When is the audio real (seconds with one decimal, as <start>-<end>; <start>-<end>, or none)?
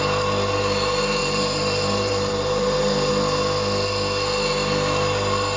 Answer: 0.0-1.2; 3.1-5.6